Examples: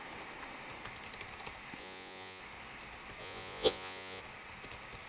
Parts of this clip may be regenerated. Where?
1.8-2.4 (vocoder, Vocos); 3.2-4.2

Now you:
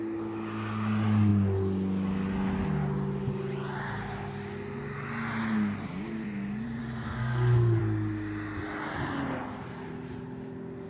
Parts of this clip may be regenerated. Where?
6.8-7.8 (codec, SNAC)

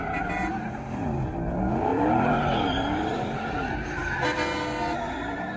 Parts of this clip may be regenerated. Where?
1.9-3.5 (vocoder, BigVGAN v2)

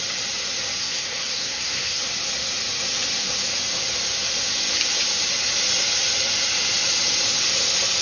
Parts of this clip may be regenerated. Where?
0.8-2.0 (codec, SNAC)

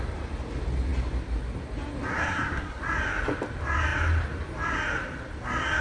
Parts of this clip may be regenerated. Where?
2.1-2.8 (codec, SNAC)

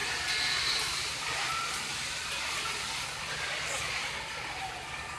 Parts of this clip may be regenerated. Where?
none